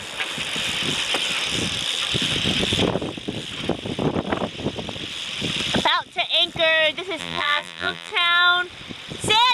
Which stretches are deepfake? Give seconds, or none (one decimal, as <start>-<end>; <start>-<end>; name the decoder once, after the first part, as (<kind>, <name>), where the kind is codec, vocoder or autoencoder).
7.2-8.1 (vocoder, BigVGAN v2)